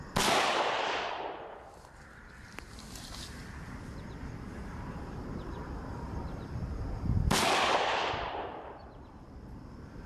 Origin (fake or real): fake